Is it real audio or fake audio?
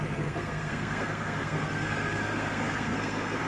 fake